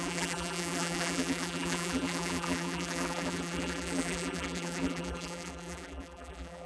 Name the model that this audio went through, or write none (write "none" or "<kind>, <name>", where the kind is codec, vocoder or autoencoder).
vocoder, BigVGAN v2